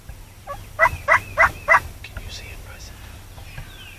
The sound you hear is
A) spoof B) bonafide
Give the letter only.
B